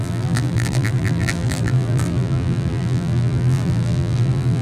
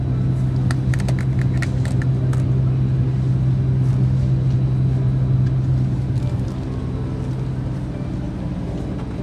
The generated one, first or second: first